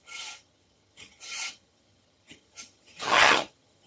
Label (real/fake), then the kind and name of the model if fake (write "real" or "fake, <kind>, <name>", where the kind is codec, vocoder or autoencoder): fake, vocoder, HiFi-GAN